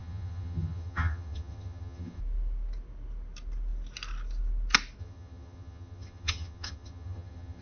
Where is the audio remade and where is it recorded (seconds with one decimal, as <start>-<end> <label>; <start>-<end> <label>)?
0.0-2.2 remade; 2.2-5.0 recorded; 5.0-7.6 remade